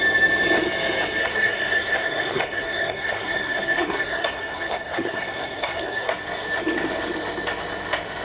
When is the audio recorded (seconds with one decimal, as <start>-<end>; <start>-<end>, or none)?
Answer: 0.0-1.2; 6.1-8.2